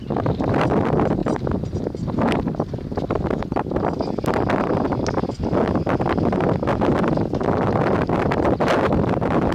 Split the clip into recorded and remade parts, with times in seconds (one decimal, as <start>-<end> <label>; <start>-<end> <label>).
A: 0.0-9.5 recorded